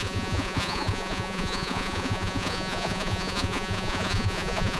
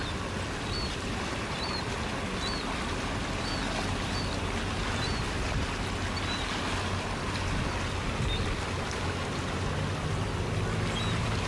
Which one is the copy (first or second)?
first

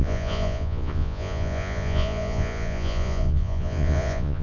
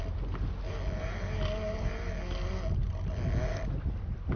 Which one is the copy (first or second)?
first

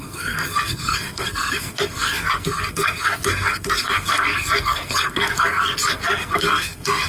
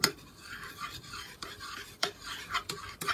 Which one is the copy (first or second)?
first